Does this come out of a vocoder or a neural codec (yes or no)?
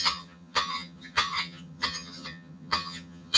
yes